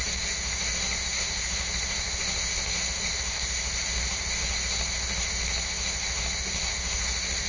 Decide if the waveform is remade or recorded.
remade